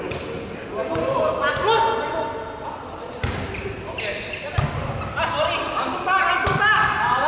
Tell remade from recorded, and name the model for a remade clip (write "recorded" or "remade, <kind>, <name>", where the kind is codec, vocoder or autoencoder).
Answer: recorded